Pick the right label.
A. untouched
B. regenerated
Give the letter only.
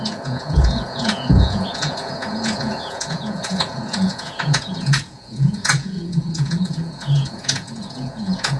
B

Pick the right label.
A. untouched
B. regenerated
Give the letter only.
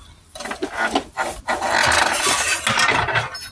A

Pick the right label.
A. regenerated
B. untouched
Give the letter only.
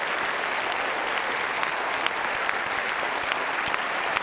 B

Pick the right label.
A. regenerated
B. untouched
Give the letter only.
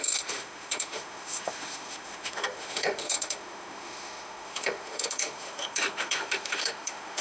A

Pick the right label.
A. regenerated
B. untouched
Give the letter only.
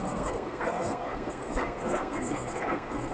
A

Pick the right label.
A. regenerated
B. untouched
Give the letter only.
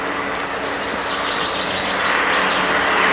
B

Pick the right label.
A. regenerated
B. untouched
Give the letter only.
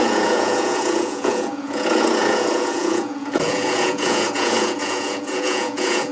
A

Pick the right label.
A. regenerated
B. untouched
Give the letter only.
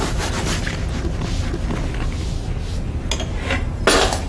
B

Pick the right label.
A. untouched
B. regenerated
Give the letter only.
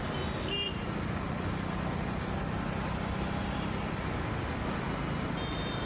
A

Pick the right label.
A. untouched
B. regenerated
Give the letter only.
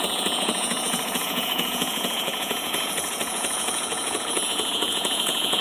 B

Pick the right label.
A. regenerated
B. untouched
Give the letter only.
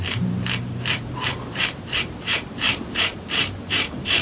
A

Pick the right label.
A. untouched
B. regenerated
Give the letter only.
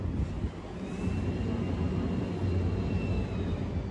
A